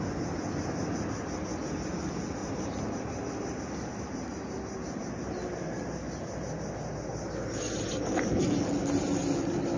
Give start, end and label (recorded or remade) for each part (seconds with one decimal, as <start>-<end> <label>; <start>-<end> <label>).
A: 0.0-2.4 recorded; 2.4-3.6 remade; 3.6-9.8 recorded